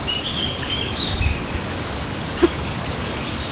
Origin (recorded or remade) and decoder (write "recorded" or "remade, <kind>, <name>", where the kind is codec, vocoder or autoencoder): remade, codec, DAC